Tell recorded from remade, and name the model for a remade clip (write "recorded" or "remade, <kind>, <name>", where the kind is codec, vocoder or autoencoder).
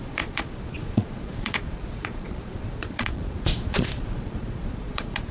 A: remade, vocoder, Vocos